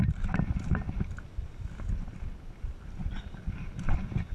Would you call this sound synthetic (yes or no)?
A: no